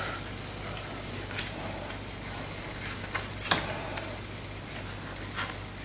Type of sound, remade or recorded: recorded